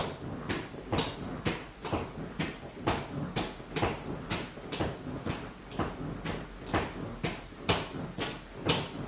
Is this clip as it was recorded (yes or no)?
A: yes